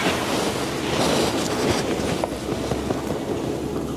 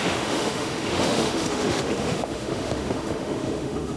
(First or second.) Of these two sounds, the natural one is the first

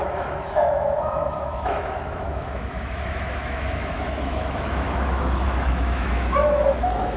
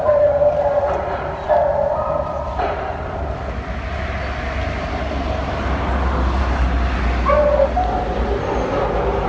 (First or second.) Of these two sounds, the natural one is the second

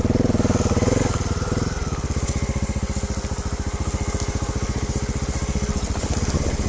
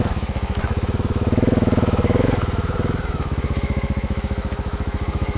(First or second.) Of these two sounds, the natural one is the first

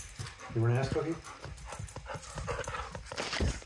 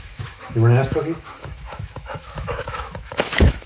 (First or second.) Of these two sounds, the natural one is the first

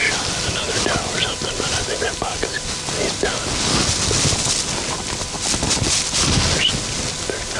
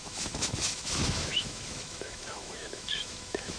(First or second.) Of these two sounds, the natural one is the first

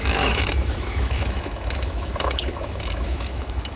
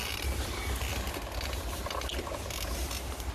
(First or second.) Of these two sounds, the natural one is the second